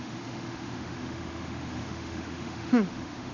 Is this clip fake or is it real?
fake